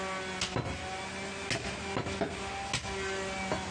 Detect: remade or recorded recorded